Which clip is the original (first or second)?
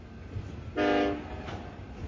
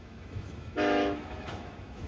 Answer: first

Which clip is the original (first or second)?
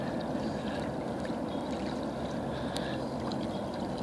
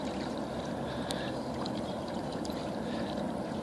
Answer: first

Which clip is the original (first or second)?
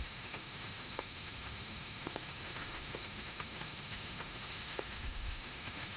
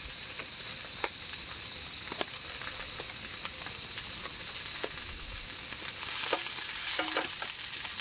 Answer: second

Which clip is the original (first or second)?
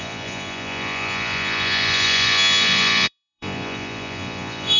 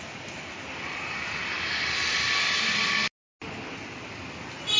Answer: second